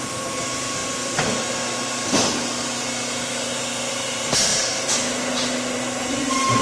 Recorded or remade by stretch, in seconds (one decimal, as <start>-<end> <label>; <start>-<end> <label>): 0.0-0.8 remade; 0.8-3.9 recorded; 3.9-4.5 remade; 4.5-6.0 recorded; 6.0-6.6 remade